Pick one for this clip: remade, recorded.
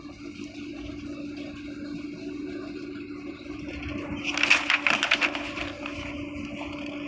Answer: recorded